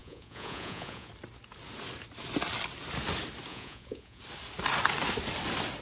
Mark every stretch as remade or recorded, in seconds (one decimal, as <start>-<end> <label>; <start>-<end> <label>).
0.0-1.1 remade; 1.1-3.5 recorded; 3.5-4.2 remade; 4.2-5.8 recorded

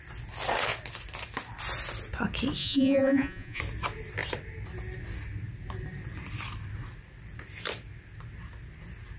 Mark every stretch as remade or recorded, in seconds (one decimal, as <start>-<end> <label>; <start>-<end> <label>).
0.0-2.6 recorded; 2.6-3.6 remade; 3.6-9.2 recorded

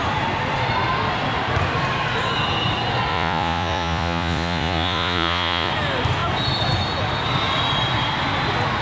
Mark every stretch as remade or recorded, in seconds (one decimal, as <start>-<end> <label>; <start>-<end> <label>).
0.0-3.1 recorded; 3.1-5.7 remade; 5.7-8.8 recorded

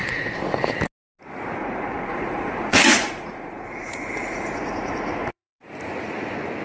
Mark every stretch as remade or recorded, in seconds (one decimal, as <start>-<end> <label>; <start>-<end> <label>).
0.0-0.7 remade; 0.7-1.6 recorded; 1.6-5.6 remade; 5.6-6.6 recorded